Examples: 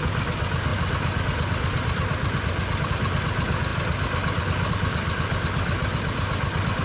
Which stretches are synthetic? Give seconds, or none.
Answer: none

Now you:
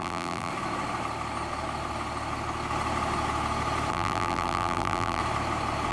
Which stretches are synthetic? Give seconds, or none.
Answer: 0.0-0.5 (vocoder, BigVGAN v2); 3.9-5.2

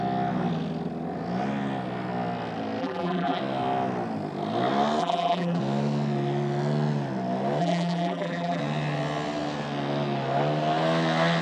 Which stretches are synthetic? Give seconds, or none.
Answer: 2.8-3.4 (vocoder, BigVGAN v2); 5.0-5.6; 7.6-8.6

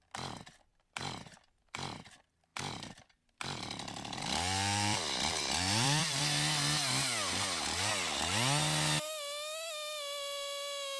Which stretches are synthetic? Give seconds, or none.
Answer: 2.5-6.2 (vocoder, BigVGAN v2)

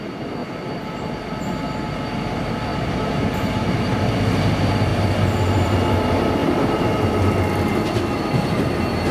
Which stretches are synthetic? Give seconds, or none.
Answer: 2.7-4.0 (vocoder, BigVGAN v2); 6.4-7.1

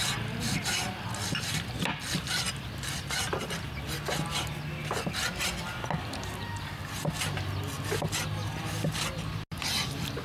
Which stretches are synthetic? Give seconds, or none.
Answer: none

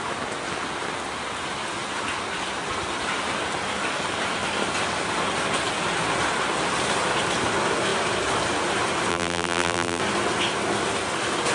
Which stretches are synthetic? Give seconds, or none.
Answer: 9.1-10.0 (vocoder, BigVGAN v2)